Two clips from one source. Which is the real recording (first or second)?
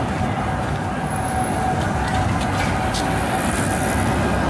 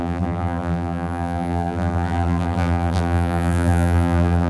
first